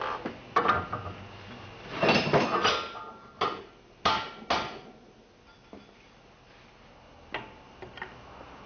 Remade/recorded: recorded